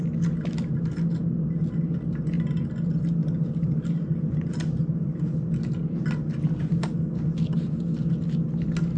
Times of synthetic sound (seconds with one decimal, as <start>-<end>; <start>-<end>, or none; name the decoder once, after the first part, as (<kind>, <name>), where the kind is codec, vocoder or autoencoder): none